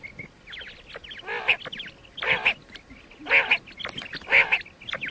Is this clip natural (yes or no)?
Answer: yes